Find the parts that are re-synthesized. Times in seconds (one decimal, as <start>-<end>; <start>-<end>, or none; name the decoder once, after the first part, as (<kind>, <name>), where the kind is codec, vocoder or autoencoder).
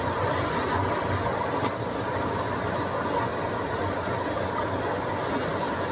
0.0-0.8 (vocoder, Vocos); 2.7-3.3; 4.8-5.9